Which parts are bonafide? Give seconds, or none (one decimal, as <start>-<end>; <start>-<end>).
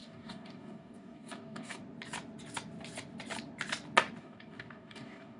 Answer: 1.8-4.2